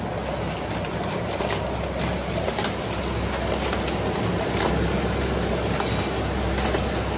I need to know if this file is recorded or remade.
recorded